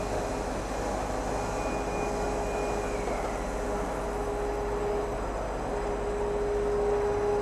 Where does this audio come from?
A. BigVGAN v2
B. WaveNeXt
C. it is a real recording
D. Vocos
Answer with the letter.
C